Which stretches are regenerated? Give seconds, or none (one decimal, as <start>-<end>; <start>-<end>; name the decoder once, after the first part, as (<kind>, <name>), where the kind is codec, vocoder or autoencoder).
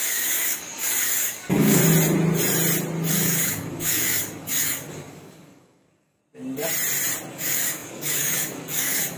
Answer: 0.0-1.8 (codec, DAC); 3.1-6.2; 7.3-9.2